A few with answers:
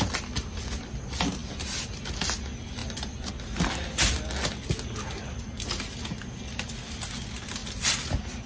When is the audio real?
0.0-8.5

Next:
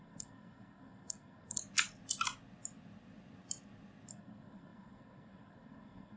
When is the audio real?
1.6-4.1